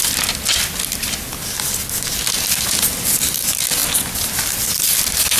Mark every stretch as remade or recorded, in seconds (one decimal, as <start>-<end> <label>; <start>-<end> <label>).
0.0-5.4 recorded